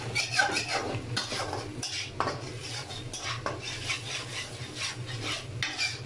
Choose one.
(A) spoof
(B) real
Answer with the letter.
B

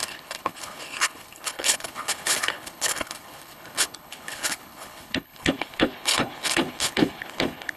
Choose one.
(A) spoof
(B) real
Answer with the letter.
A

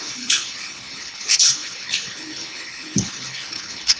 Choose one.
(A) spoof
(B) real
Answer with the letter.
A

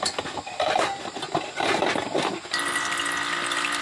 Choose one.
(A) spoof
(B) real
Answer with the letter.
B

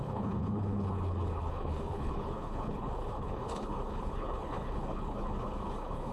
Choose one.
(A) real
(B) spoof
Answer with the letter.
B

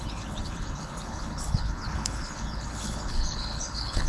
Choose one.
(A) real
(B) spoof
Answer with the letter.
B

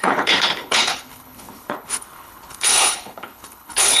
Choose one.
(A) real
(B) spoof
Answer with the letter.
B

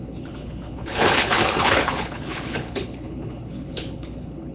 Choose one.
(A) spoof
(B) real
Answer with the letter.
A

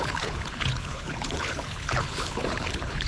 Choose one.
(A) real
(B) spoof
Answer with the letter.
B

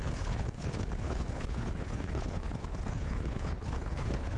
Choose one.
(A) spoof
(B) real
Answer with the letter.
A